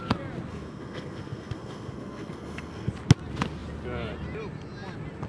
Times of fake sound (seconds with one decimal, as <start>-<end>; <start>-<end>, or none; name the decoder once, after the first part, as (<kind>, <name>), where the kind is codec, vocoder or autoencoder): 0.5-2.9 (codec, SNAC)

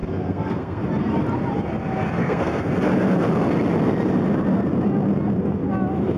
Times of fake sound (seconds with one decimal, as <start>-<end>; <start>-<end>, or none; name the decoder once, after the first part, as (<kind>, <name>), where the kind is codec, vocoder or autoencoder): 0.0-0.8 (codec, SNAC); 2.2-2.7

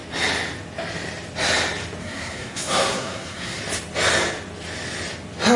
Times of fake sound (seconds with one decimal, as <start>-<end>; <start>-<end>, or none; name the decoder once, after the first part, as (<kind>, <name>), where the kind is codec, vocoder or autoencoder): 2.0-3.6 (codec, SNAC)

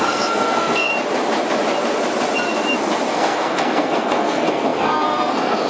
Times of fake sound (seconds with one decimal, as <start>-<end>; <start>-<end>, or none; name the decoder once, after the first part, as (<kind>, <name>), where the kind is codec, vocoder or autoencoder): 0.0-0.9 (codec, SNAC); 3.1-5.7

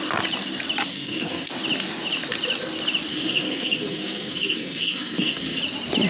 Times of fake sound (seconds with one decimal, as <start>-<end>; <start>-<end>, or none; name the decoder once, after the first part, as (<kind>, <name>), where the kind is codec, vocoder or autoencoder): 0.9-1.5 (codec, SNAC); 3.1-5.6

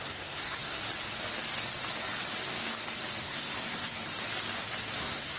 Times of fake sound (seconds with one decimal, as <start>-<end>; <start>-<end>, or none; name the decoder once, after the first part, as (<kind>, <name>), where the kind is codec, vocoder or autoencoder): 0.0-0.8 (codec, SNAC); 3.2-3.9; 5.0-5.4

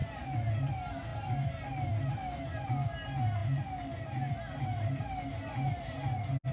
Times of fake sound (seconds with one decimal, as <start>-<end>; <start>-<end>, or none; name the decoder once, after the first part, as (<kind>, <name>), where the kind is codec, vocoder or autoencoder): none

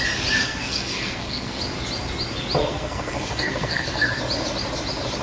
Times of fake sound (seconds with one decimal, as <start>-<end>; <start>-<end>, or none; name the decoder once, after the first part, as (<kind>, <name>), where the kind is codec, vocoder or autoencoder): 0.4-1.6 (codec, SNAC); 2.6-4.2